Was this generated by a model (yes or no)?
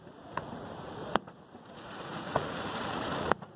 yes